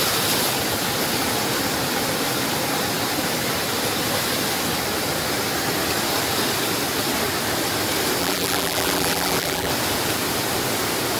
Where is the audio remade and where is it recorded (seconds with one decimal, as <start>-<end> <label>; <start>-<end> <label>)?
0.0-8.2 recorded; 8.2-9.7 remade; 9.7-11.2 recorded